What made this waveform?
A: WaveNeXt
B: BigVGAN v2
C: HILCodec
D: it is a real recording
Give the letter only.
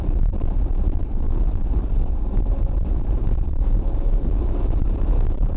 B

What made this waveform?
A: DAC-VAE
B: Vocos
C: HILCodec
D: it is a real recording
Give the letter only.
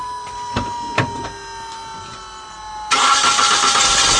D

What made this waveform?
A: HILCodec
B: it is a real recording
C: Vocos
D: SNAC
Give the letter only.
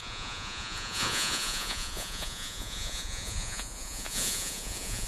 C